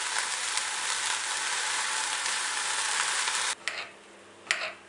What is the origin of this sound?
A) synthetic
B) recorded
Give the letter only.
B